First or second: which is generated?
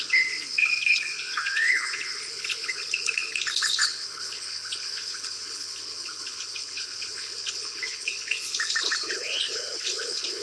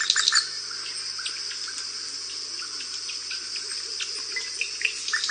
first